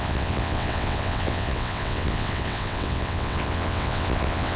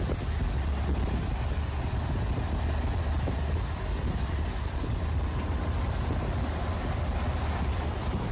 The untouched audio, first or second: second